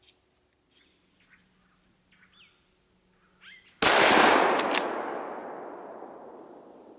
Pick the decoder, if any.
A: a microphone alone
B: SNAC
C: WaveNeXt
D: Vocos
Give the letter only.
A